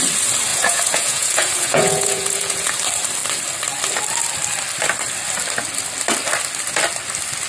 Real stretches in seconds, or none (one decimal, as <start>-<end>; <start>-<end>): 0.0-0.5; 2.7-7.5